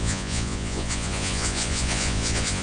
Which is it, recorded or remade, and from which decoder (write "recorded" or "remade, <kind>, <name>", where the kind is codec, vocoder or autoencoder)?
remade, vocoder, Vocos